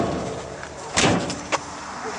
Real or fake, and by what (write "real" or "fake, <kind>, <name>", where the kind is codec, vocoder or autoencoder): fake, vocoder, BigVGAN v2